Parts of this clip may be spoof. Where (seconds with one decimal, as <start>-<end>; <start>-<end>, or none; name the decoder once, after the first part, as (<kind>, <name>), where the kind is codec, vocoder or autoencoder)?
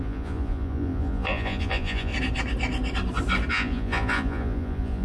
0.0-2.1 (vocoder, Vocos); 3.5-5.0